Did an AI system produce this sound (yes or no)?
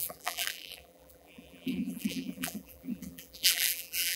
yes